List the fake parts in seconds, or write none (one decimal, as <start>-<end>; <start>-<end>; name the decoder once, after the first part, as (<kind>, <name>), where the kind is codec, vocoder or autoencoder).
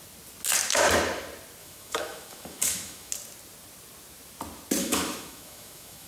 1.6-3.1 (autoencoder, DAC-VAE); 4.8-6.1